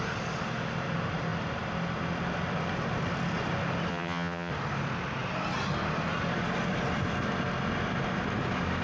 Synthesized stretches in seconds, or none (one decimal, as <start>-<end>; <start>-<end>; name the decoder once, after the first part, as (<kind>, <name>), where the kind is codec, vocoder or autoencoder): 3.9-4.5 (vocoder, HiFi-GAN)